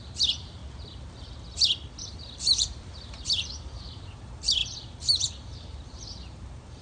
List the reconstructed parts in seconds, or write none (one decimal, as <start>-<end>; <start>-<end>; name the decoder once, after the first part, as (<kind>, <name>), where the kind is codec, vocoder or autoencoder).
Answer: 0.0-0.6 (vocoder, BigVGAN v2); 2.0-6.8